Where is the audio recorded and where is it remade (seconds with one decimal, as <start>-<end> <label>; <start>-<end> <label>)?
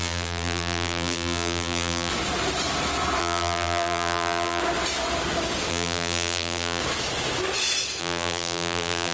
0.0-2.1 remade; 2.1-3.2 recorded; 3.2-4.6 remade; 4.6-5.7 recorded; 5.7-6.8 remade; 6.8-8.0 recorded; 8.0-9.1 remade